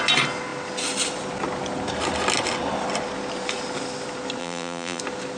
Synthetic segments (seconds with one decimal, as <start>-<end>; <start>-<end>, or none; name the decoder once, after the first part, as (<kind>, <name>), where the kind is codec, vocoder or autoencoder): 4.4-5.0 (vocoder, BigVGAN v2)